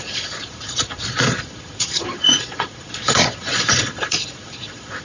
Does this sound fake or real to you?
fake